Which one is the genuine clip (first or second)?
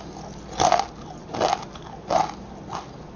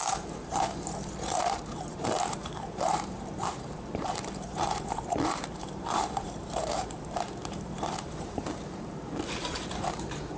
first